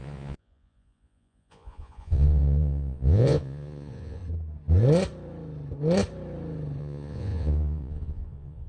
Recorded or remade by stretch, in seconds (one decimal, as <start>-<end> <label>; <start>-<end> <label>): 0.0-4.2 remade; 4.2-6.8 recorded; 6.8-8.7 remade